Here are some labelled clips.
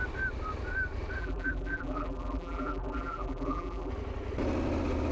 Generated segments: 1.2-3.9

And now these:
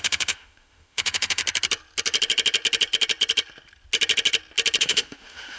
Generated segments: 0.0-1.4; 4.8-5.6

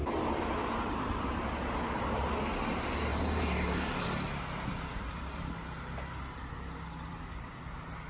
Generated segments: 3.1-4.4